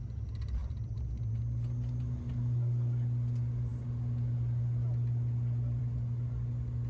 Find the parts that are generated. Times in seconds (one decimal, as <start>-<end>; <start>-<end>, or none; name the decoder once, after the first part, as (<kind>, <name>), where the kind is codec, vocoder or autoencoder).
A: 0.6-1.4 (vocoder, BigVGAN v2)